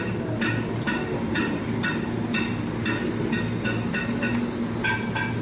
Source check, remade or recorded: recorded